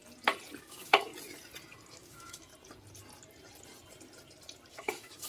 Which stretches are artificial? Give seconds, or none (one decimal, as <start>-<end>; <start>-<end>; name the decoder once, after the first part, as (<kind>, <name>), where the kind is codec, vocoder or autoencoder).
0.6-1.1 (autoencoder, DAC-VAE); 1.9-2.5; 4.7-5.3